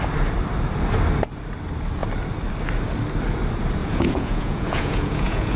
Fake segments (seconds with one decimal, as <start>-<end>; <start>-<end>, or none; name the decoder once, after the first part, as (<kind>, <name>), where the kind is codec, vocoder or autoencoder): 3.8-5.6 (vocoder, Vocos)